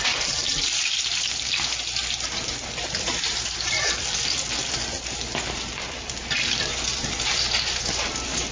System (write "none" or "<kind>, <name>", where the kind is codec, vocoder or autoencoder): vocoder, BigVGAN v2